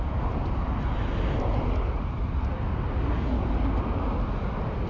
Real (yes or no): yes